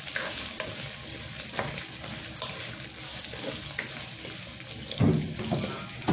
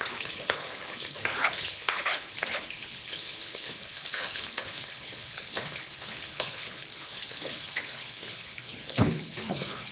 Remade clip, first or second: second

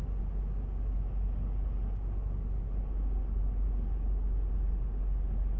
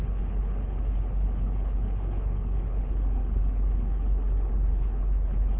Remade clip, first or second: second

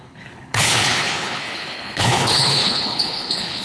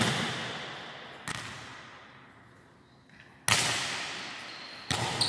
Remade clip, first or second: first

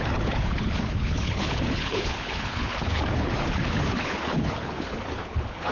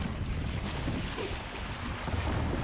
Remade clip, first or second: first